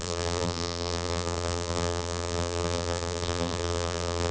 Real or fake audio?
fake